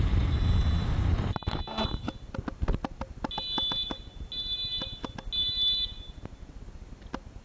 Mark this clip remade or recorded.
recorded